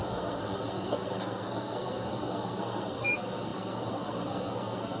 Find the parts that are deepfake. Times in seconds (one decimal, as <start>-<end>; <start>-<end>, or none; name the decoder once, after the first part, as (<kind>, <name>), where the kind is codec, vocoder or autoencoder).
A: 0.0-5.0 (codec, SNAC)